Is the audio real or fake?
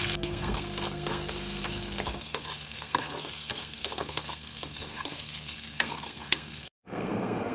fake